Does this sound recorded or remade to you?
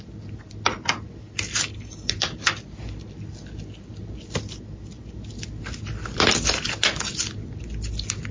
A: recorded